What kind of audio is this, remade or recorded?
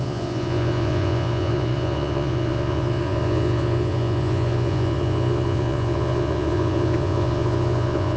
remade